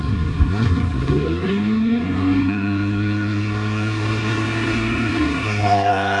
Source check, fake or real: fake